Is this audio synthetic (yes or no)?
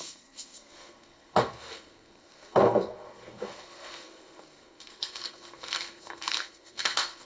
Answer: yes